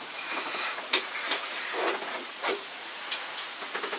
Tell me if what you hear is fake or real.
fake